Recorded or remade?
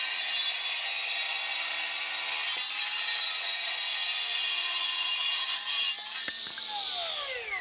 recorded